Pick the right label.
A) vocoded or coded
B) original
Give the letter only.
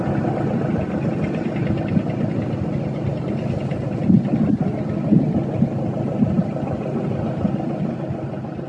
B